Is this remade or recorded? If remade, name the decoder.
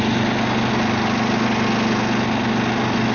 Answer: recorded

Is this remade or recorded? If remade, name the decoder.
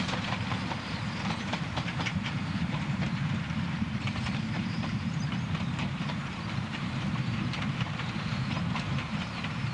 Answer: remade, vocoder, BigVGAN v2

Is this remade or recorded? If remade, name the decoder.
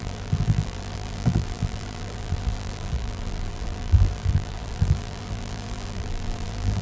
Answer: remade, vocoder, BigVGAN v2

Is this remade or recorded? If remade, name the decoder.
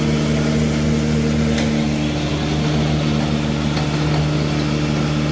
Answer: recorded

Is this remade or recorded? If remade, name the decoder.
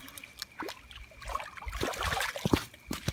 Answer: recorded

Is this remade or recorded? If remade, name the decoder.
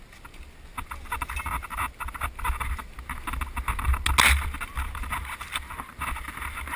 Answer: recorded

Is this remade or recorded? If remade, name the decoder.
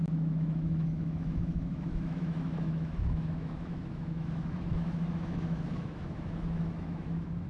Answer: remade, autoencoder, DAC-VAE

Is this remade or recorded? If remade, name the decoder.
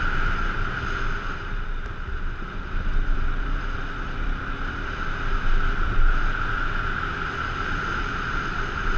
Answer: recorded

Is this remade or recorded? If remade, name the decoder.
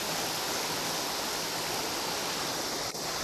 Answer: recorded